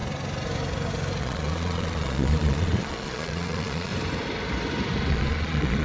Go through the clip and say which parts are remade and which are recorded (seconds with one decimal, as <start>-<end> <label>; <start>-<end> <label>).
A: 0.0-1.2 recorded; 1.2-3.9 remade; 3.9-5.1 recorded; 5.1-5.8 remade